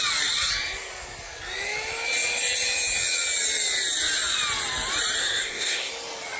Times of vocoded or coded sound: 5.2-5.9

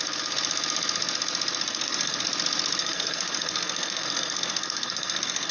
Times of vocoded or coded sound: 1.7-2.3; 2.8-5.5

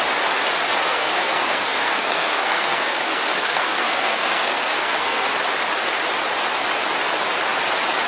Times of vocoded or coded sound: 0.9-5.3

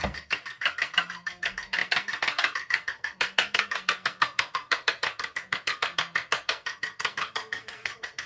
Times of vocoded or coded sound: 0.0-8.3

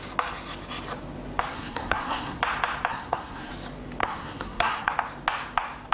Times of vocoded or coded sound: 1.5-2.4; 2.9-3.5; 4.0-4.9

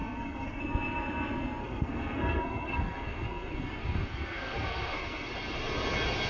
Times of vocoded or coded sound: 0.0-0.6; 1.6-5.3